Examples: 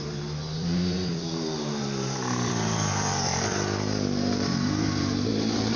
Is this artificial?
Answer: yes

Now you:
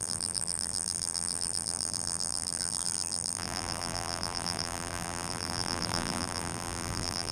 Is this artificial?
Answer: yes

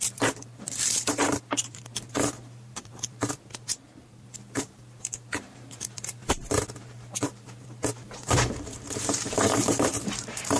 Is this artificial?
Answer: yes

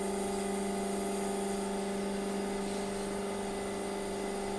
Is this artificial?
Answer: no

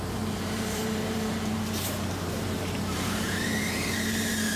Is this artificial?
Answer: yes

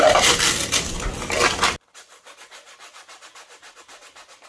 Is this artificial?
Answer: no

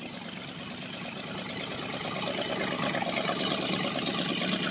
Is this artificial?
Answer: no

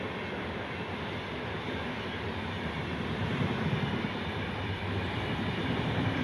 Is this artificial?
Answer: yes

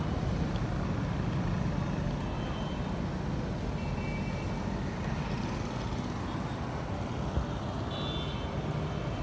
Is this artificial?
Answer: no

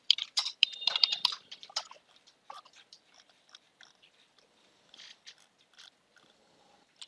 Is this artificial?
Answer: yes